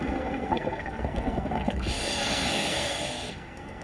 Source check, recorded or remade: remade